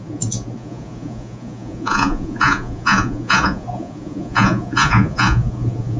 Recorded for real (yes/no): no